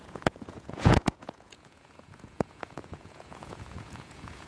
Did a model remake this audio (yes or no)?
yes